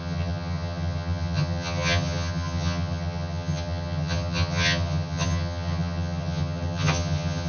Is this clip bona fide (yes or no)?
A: no